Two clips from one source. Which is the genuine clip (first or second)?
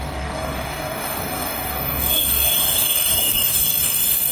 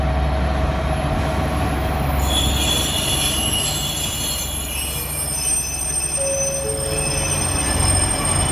second